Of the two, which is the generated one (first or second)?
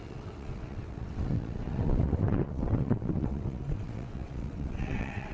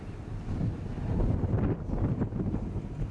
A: first